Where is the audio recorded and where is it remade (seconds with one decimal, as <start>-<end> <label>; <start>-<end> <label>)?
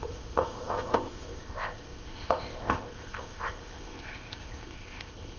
0.0-5.4 remade